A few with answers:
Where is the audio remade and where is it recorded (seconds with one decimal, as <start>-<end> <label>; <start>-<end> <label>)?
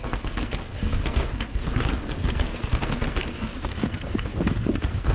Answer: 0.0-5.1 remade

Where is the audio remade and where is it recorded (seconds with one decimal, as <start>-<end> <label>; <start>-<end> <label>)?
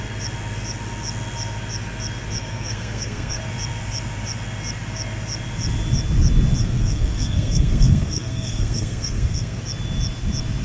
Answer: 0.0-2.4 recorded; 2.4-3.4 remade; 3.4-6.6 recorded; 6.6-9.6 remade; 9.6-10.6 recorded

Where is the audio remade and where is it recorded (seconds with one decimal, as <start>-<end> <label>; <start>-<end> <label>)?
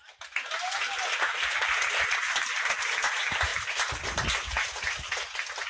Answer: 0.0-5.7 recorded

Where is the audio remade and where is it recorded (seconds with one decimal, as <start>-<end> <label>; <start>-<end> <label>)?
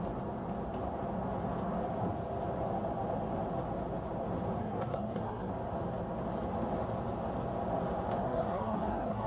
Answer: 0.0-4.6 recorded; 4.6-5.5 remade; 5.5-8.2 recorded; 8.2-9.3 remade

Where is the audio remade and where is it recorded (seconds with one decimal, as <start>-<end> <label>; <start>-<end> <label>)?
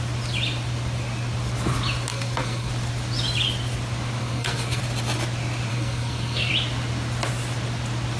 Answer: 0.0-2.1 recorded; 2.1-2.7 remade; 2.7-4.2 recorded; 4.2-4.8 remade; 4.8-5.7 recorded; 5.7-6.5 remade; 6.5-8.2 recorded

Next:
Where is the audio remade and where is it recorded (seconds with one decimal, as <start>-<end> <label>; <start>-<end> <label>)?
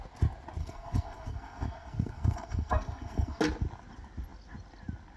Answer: 0.0-0.6 recorded; 0.6-3.4 remade; 3.4-5.2 recorded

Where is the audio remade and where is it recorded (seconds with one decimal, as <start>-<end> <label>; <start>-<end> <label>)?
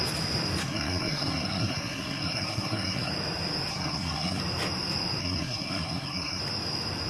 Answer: 0.0-0.6 recorded; 0.6-3.1 remade; 3.1-3.7 recorded; 3.7-4.4 remade; 4.4-5.2 recorded; 5.2-6.4 remade; 6.4-7.1 recorded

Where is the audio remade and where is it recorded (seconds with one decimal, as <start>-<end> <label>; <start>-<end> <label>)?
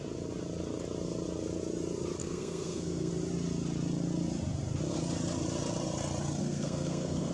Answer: 0.0-2.2 recorded; 2.2-3.1 remade; 3.1-6.4 recorded; 6.4-7.3 remade